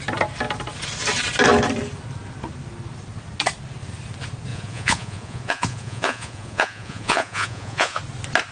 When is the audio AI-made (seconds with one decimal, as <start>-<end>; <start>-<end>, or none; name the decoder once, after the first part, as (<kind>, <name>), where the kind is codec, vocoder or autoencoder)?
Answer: 4.5-8.0 (vocoder, Vocos)